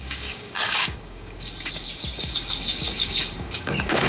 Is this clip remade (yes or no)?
yes